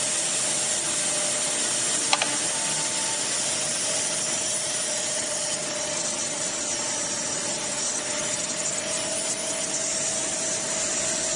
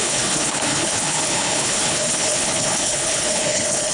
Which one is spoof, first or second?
second